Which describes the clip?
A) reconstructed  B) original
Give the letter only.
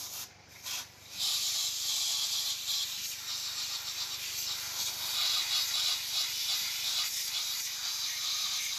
B